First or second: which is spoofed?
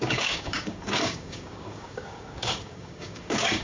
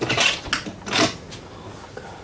first